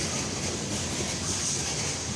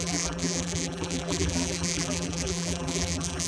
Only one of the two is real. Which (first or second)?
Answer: first